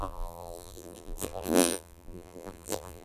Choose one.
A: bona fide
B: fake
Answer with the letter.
B